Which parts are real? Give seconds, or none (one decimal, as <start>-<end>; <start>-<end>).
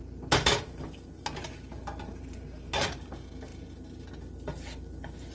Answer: 0.0-5.3